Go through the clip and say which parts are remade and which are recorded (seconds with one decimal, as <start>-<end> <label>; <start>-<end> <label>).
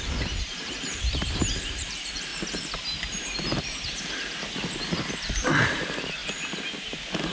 0.0-2.3 remade; 2.3-5.0 recorded; 5.0-6.2 remade; 6.2-7.3 recorded